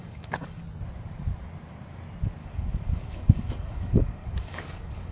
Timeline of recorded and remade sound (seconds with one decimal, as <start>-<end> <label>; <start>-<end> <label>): 0.0-0.6 remade; 0.6-2.4 recorded; 2.4-5.1 remade

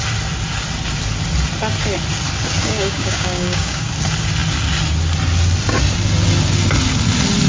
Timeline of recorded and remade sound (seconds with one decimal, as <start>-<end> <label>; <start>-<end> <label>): 0.0-2.6 recorded; 2.6-3.9 remade; 3.9-7.5 recorded

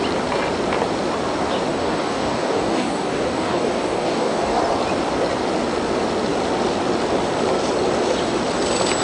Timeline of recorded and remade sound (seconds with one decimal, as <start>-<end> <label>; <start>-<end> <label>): 0.0-1.7 recorded; 1.7-4.6 remade; 4.6-9.0 recorded

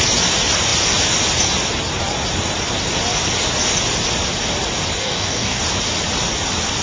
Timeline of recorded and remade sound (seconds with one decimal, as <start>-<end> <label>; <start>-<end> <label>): 0.0-5.0 recorded; 5.0-5.6 remade; 5.6-6.8 recorded

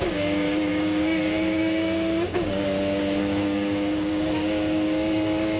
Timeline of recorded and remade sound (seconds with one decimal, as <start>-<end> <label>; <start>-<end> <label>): 0.0-5.6 remade